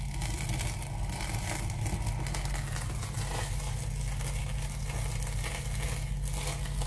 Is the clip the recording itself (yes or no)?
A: yes